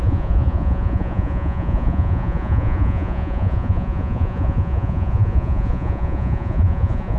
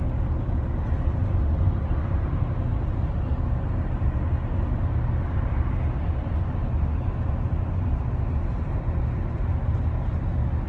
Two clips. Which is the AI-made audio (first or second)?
first